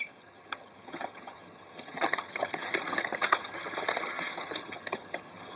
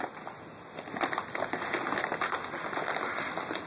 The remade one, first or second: first